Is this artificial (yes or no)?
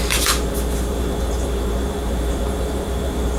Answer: yes